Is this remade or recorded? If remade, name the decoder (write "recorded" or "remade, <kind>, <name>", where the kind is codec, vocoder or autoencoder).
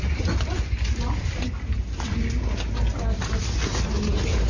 recorded